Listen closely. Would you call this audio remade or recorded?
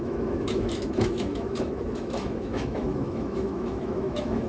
remade